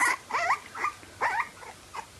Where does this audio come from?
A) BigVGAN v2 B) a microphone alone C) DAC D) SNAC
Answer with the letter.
B